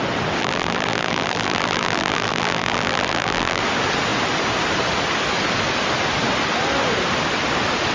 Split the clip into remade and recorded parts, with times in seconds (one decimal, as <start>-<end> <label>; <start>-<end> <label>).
0.0-0.4 recorded; 0.4-3.6 remade; 3.6-7.9 recorded